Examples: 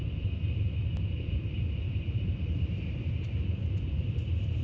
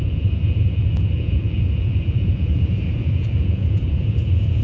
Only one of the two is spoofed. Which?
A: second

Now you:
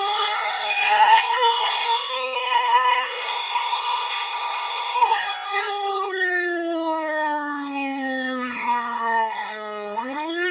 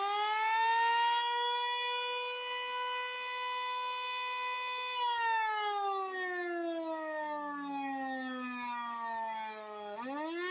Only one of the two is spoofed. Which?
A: first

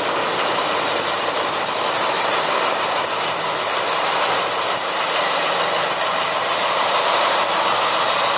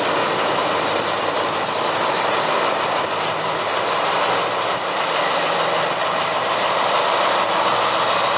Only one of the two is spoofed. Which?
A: first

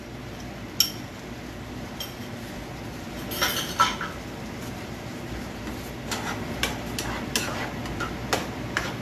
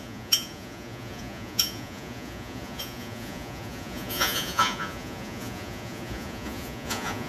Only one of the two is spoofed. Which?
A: second